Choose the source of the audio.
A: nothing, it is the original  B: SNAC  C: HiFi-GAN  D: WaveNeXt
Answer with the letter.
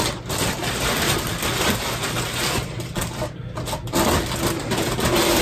A